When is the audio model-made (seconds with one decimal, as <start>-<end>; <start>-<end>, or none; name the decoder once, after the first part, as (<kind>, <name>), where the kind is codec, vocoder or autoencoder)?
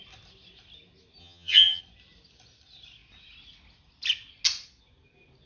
1.2-1.8 (vocoder, HiFi-GAN)